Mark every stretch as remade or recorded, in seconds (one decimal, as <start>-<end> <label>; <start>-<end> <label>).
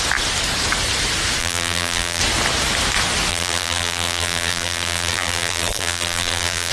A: 0.0-1.4 recorded; 1.4-2.2 remade; 2.2-3.3 recorded; 3.3-6.7 remade